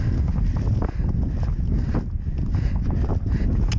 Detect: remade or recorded recorded